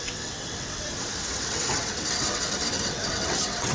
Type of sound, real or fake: fake